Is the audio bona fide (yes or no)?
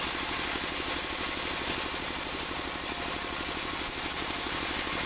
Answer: yes